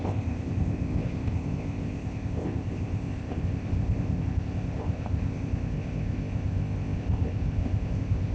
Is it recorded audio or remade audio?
remade